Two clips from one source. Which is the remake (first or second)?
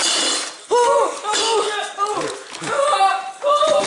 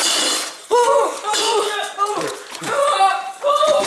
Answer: second